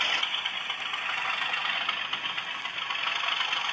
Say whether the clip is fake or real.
real